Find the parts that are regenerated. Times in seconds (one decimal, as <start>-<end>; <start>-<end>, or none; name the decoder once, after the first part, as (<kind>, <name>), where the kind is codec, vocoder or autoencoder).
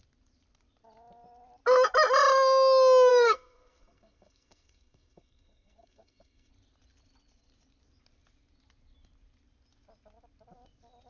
3.1-6.5 (codec, SNAC)